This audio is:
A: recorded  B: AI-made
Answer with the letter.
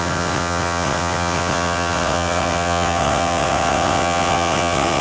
B